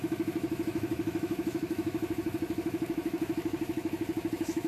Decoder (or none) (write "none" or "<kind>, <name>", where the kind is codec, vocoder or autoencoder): autoencoder, DAC-VAE